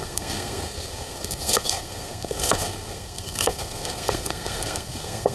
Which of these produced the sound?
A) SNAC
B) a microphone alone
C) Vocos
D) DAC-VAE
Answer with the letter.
A